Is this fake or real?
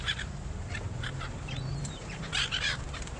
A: fake